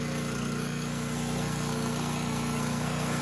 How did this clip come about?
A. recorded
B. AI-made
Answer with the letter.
B